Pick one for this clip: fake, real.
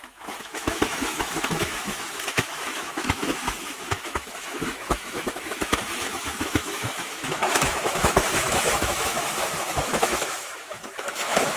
fake